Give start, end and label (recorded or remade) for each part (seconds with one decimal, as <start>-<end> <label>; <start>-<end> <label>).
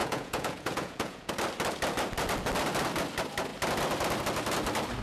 0.0-1.3 remade; 1.3-5.0 recorded